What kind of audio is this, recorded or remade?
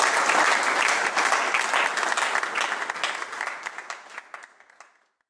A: recorded